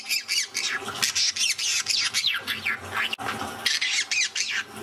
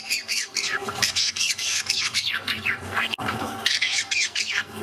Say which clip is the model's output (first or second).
second